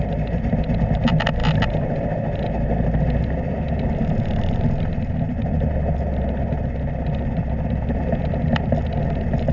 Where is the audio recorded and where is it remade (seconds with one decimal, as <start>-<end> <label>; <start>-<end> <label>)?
0.0-9.5 recorded

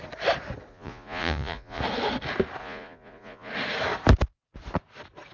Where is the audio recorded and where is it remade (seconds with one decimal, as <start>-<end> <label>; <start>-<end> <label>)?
0.0-0.7 recorded; 0.7-1.8 remade; 1.8-2.6 recorded; 2.6-3.5 remade; 3.5-5.3 recorded

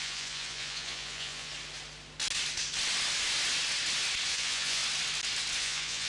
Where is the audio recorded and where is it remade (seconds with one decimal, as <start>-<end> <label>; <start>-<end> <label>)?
0.0-1.5 remade; 1.5-4.3 recorded; 4.3-4.8 remade; 4.8-5.6 recorded; 5.6-6.1 remade

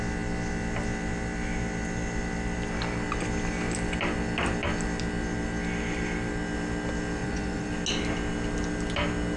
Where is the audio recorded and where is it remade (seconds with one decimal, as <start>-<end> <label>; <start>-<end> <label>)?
0.0-7.2 recorded; 7.2-7.7 remade; 7.7-9.4 recorded

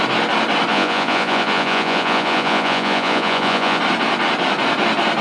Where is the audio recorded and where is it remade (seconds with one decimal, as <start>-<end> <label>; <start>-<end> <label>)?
0.0-0.7 recorded; 0.7-3.8 remade; 3.8-5.2 recorded

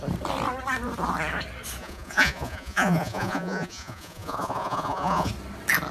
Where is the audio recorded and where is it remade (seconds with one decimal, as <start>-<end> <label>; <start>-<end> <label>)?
0.0-1.8 recorded; 1.8-5.3 remade; 5.3-5.9 recorded

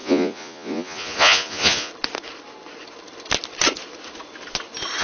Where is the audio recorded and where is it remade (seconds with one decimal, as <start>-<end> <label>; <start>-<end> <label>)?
0.0-1.9 remade; 1.9-5.0 recorded

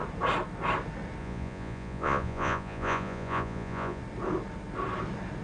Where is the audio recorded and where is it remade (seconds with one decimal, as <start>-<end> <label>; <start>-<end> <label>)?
0.0-1.2 recorded; 1.2-4.0 remade; 4.0-5.4 recorded